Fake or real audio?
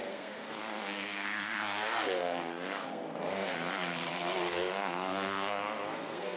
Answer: fake